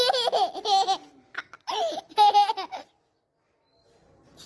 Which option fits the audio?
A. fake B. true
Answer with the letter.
B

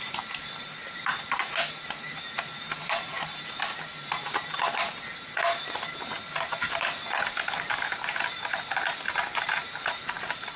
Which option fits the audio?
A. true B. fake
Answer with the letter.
B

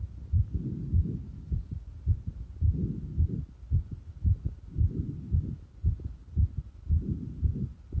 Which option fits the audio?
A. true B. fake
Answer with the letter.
A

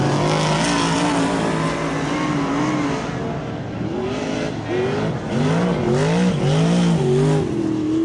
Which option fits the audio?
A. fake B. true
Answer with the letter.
B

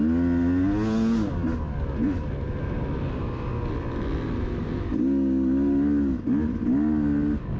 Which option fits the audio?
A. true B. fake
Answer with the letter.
A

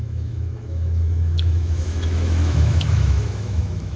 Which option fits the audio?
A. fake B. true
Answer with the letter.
A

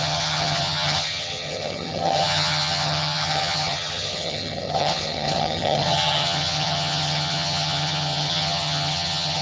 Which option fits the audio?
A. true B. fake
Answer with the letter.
B